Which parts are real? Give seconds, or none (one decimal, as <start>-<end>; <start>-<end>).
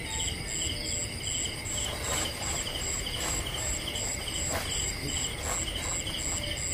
0.0-1.4; 5.4-6.7